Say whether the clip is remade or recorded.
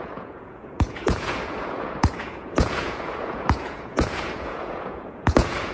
remade